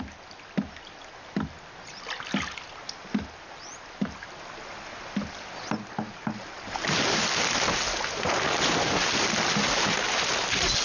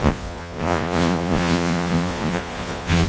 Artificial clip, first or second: second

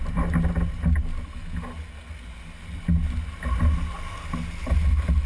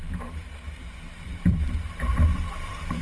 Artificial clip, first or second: second